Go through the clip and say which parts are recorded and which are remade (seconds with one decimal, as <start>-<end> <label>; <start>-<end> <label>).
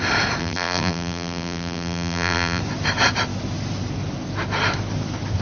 0.0-0.4 recorded; 0.4-2.6 remade; 2.6-5.4 recorded